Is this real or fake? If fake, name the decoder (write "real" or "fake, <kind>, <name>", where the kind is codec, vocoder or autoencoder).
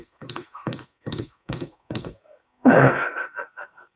fake, codec, SNAC